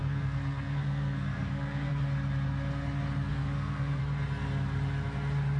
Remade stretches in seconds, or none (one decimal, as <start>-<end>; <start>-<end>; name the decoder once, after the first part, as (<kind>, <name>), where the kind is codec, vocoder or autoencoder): 0.0-1.9 (codec, SNAC); 3.3-4.0

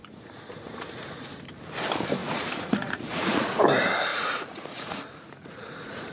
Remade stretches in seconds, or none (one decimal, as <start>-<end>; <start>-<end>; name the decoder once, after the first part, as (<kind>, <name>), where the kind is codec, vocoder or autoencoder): 0.0-1.4 (vocoder, Vocos); 2.2-3.6; 4.1-6.1

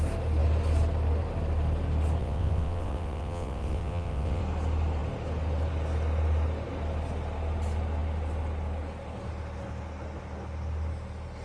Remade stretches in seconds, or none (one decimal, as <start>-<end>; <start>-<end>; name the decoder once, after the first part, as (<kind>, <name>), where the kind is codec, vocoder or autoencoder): 2.2-4.4 (vocoder, WaveNeXt)

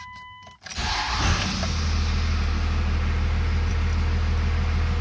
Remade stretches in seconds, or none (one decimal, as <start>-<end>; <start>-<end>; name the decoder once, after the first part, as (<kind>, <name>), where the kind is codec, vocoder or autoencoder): none

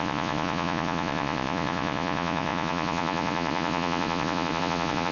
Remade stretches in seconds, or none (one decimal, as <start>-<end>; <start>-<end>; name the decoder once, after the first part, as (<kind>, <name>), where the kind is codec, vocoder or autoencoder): 0.0-5.1 (vocoder, Vocos)

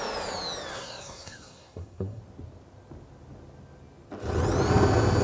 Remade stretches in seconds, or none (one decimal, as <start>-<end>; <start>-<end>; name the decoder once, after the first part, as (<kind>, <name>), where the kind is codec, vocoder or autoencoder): 0.7-2.2 (codec, SNAC)

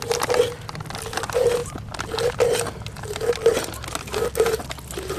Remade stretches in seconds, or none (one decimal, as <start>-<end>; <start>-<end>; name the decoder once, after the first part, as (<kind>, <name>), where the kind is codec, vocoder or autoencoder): none